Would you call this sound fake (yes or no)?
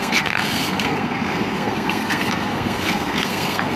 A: yes